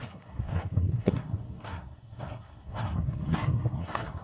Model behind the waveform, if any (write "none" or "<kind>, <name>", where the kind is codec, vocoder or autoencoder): codec, SNAC